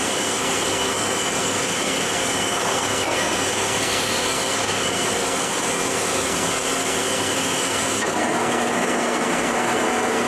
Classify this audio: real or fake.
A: fake